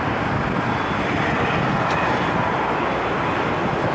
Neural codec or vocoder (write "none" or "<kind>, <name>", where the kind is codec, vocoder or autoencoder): none